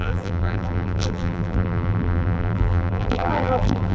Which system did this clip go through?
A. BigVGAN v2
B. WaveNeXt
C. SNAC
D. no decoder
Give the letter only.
A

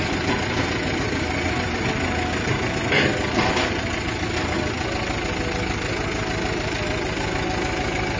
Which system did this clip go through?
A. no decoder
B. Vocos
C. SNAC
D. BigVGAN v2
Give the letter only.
A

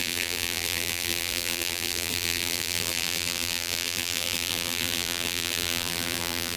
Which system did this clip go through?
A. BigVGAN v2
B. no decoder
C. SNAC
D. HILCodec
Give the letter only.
A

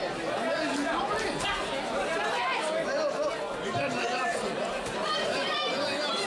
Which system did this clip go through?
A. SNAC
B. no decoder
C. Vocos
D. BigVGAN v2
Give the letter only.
B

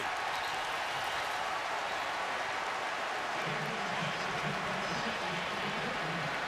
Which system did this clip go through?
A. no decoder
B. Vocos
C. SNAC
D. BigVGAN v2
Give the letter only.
D